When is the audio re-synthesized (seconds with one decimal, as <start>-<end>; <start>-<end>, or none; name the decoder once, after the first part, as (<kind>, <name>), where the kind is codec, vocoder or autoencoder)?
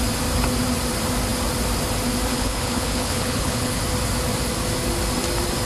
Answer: 2.3-3.8 (codec, HILCodec)